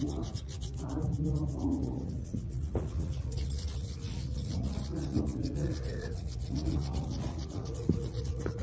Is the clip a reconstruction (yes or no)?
yes